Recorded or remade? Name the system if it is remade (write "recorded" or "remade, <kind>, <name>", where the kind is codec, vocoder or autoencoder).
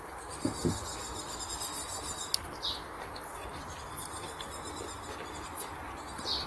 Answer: recorded